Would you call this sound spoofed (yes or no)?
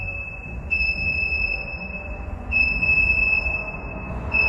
yes